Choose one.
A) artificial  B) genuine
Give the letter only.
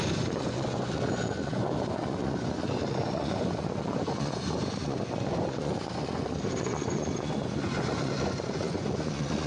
A